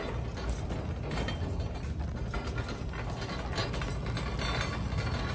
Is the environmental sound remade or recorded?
recorded